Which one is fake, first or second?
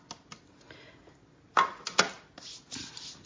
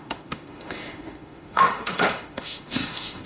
second